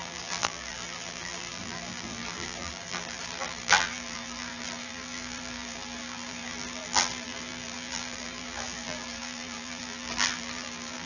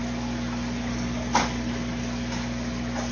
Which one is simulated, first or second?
first